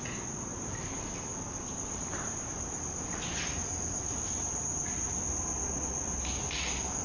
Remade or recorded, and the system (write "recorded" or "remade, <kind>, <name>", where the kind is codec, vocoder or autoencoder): recorded